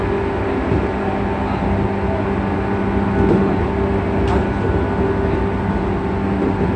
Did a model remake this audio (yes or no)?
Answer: no